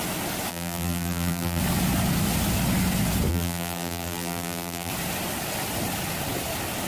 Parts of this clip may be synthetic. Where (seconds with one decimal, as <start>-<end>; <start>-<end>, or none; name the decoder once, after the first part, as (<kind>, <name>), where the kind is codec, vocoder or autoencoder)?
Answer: 0.5-1.6 (vocoder, BigVGAN v2); 3.3-4.9